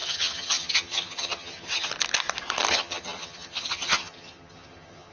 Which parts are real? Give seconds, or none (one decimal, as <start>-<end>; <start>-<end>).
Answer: 1.9-2.7